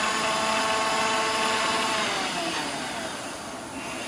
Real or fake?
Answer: real